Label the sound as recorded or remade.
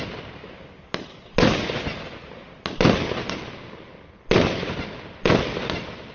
recorded